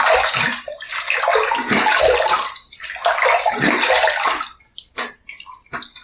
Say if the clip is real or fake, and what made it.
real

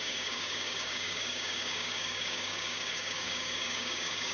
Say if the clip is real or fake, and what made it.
fake, codec, DAC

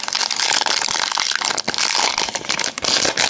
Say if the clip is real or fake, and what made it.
real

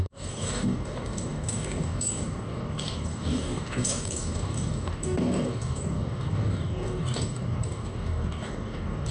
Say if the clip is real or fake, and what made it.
fake, codec, DAC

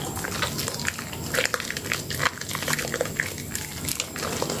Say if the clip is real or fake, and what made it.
real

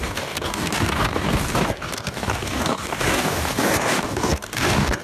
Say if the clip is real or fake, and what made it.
fake, codec, DAC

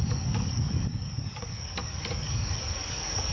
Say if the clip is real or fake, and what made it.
fake, codec, DAC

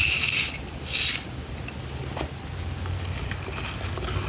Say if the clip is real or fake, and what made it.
real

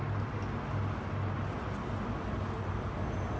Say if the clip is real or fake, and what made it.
real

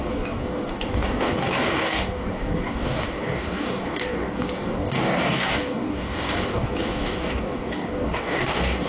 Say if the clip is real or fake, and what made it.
fake, codec, DAC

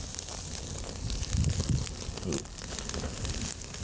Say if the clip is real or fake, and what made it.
real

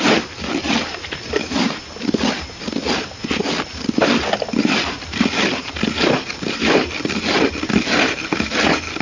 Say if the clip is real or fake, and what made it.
real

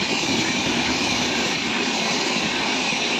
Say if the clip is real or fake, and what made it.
fake, codec, DAC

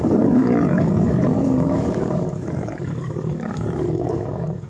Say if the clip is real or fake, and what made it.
fake, codec, DAC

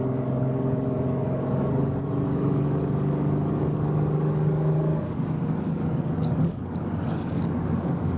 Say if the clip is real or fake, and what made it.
fake, codec, DAC